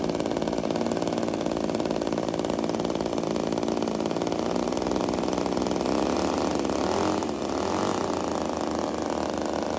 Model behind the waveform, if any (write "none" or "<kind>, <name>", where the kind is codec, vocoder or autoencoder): none